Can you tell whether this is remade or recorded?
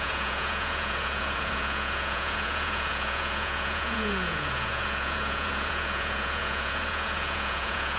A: remade